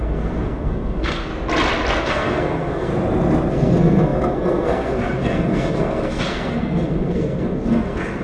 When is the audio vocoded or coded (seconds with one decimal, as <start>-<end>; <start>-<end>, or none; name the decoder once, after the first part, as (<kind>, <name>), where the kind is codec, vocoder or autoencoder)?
0.0-1.3 (codec, SNAC); 2.0-2.9; 3.5-8.2